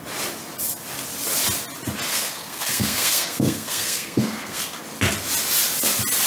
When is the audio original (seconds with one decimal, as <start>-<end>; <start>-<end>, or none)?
0.0-2.1; 4.8-6.3